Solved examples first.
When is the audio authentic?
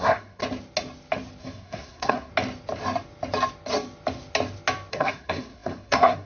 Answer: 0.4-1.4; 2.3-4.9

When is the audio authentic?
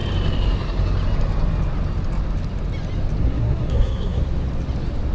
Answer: 0.0-3.2; 4.2-5.1